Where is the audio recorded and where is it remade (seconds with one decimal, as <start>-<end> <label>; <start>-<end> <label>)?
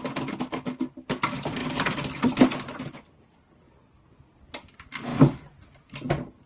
0.0-6.5 recorded